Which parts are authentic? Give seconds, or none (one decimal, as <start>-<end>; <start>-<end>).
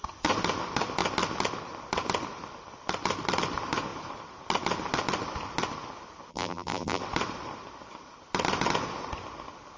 0.0-6.3; 7.0-9.8